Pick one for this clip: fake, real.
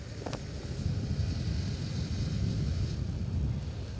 real